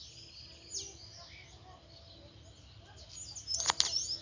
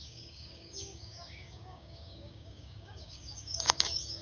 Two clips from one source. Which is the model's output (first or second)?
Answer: second